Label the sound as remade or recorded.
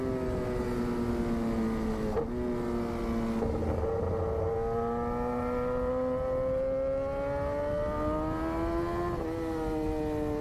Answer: recorded